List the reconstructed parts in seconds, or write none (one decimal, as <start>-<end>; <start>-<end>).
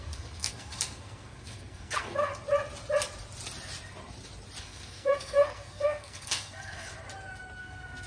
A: 0.0-2.3; 4.6-6.9; 7.6-8.1